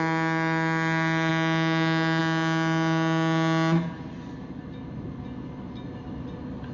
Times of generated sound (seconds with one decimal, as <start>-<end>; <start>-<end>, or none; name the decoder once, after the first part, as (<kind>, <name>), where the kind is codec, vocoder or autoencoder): none